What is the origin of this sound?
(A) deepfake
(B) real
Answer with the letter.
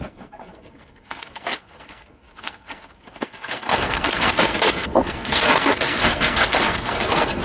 A